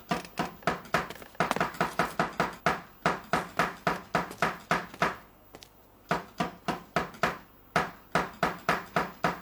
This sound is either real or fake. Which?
real